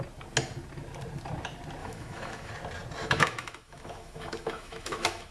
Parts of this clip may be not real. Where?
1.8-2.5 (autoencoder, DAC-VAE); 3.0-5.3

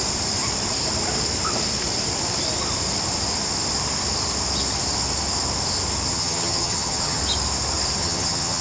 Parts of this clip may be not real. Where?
6.1-7.2 (vocoder, HiFi-GAN); 8.0-8.6